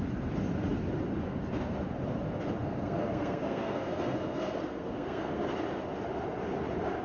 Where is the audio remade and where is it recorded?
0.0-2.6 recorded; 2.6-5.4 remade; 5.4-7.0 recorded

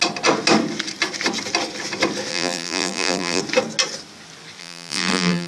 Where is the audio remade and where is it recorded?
0.0-2.3 recorded; 2.3-3.4 remade; 3.4-4.6 recorded; 4.6-5.5 remade

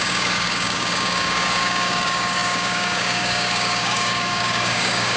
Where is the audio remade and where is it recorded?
0.0-5.2 remade

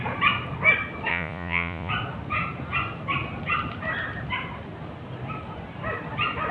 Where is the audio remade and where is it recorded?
0.0-1.1 recorded; 1.1-1.9 remade; 1.9-6.5 recorded

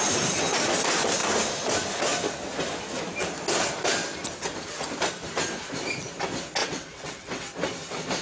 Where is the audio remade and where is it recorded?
0.0-6.6 recorded; 6.6-7.5 remade; 7.5-8.2 recorded

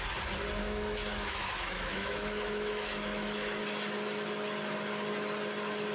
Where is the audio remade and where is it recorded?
0.0-0.6 recorded; 0.6-3.6 remade; 3.6-5.9 recorded